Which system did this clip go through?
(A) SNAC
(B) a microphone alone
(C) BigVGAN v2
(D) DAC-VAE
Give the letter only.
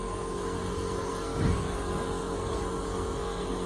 A